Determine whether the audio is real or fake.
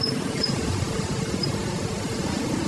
real